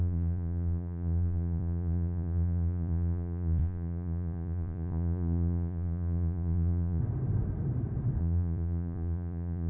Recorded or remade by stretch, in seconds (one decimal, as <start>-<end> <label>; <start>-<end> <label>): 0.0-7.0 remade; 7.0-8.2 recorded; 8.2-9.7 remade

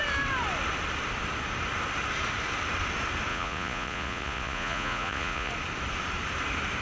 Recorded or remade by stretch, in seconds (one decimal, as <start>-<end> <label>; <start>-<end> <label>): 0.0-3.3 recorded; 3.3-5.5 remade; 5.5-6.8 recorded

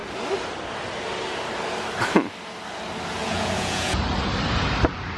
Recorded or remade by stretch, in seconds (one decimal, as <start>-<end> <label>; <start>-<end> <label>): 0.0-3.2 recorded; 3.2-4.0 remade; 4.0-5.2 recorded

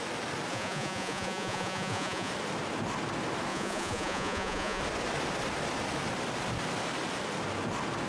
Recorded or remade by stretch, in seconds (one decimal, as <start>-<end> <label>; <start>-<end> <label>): 0.0-0.5 recorded; 0.5-2.3 remade; 2.3-3.5 recorded; 3.5-4.8 remade; 4.8-8.1 recorded

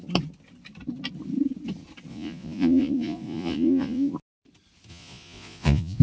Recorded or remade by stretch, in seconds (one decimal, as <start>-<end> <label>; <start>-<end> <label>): 0.0-2.1 recorded; 2.1-4.1 remade; 4.1-4.9 recorded; 4.9-6.0 remade

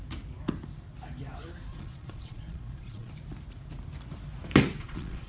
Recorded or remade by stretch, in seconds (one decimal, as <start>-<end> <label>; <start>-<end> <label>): 0.0-1.7 recorded; 1.7-3.1 remade; 3.1-4.8 recorded; 4.8-5.3 remade

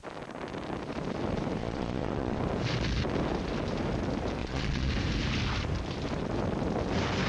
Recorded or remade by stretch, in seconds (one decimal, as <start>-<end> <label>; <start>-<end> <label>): 0.0-1.6 recorded; 1.6-2.4 remade; 2.4-4.4 recorded; 4.4-4.9 remade; 4.9-7.3 recorded

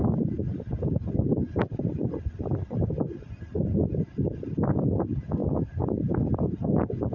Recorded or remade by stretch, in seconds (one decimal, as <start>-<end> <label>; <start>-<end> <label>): 0.0-7.1 recorded